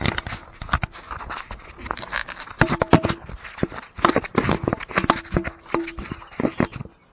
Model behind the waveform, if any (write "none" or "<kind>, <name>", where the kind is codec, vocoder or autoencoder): none